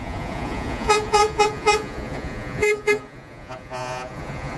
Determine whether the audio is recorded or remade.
remade